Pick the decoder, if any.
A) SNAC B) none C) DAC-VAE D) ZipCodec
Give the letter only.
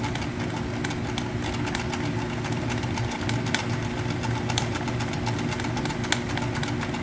B